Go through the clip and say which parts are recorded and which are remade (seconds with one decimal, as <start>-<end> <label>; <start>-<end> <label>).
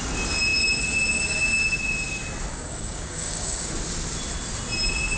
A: 0.0-2.5 recorded; 2.5-3.7 remade; 3.7-5.2 recorded